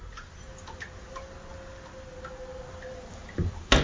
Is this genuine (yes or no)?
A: yes